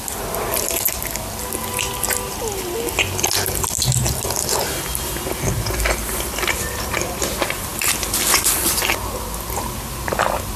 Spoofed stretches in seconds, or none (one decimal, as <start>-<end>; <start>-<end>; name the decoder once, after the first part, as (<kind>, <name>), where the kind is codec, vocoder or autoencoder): none